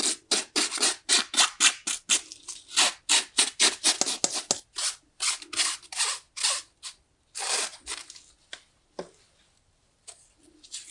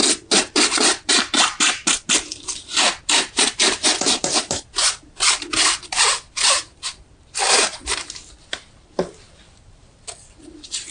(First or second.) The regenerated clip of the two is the second